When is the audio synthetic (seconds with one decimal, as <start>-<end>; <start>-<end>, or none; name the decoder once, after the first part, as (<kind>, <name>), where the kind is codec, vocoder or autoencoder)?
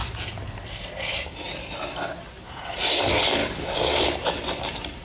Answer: 3.4-4.0 (codec, DAC)